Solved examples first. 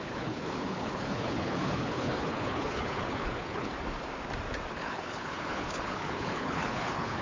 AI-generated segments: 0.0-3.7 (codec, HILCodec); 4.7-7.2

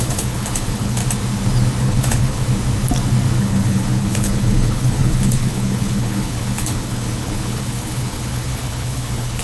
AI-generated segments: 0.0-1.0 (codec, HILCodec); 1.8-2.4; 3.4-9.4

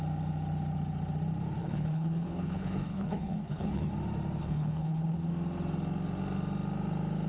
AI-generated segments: 1.6-3.9 (codec, HILCodec); 4.4-5.3

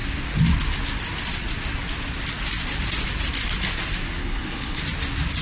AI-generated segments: 4.2-4.8 (codec, HILCodec)

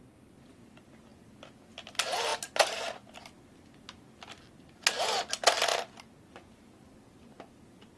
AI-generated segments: none

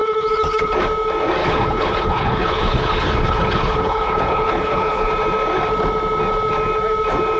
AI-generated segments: 0.0-0.7 (codec, HILCodec); 1.4-5.1

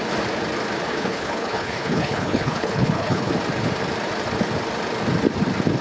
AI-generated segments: 0.9-3.3 (codec, HILCodec)